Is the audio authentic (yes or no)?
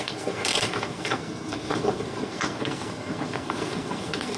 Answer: no